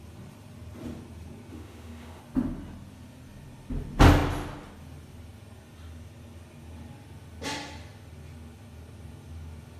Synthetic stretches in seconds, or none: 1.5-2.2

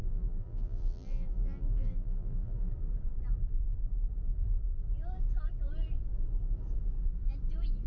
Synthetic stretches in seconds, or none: 0.0-2.7

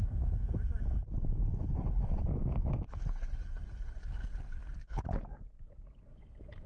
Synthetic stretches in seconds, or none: none